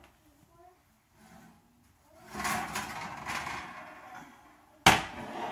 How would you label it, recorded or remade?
recorded